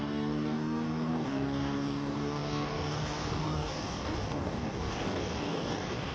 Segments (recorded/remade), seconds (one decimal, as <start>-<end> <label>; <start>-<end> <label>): 0.0-6.1 remade